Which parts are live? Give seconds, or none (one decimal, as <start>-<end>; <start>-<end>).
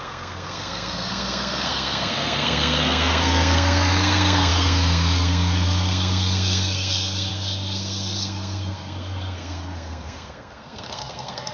none